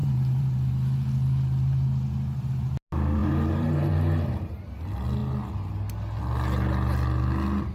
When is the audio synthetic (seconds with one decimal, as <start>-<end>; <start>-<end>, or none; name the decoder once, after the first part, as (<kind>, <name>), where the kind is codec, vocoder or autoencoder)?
0.0-0.7 (vocoder, BigVGAN v2); 3.2-3.9